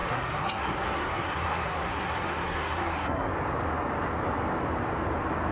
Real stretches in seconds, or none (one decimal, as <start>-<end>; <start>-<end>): 3.3-5.5